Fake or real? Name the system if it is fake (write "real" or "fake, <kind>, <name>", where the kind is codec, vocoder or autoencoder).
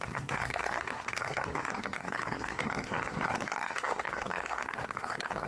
fake, codec, SNAC